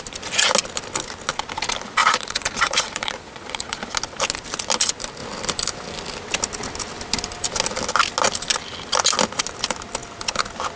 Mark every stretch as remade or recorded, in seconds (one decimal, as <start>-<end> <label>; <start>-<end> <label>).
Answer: 0.0-2.0 recorded; 2.0-3.8 remade; 3.8-10.8 recorded